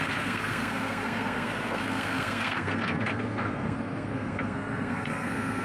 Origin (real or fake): fake